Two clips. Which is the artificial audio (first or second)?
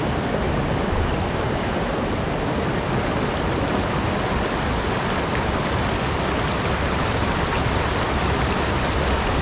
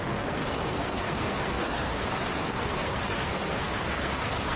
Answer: second